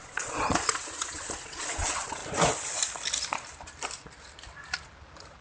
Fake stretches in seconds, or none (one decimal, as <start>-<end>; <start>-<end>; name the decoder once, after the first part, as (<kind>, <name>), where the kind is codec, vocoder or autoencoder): 0.0-2.2 (vocoder, Vocos)